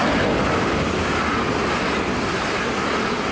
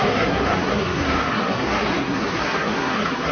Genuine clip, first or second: first